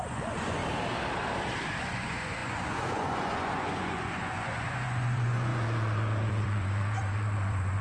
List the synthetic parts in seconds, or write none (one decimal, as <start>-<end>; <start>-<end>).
0.0-0.6; 1.8-7.8